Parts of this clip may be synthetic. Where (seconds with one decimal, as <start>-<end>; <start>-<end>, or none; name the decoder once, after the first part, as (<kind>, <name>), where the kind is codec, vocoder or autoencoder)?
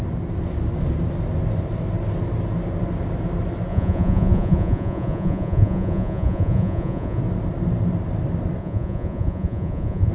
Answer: 3.7-7.2 (vocoder, Vocos); 8.6-10.1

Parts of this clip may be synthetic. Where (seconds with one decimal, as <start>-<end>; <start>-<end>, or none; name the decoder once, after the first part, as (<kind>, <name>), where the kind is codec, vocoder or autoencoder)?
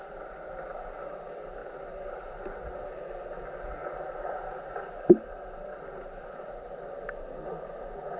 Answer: none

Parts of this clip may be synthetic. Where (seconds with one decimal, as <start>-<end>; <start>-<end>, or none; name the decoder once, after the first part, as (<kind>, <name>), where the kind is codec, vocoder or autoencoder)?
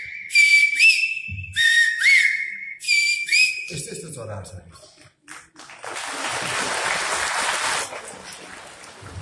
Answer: none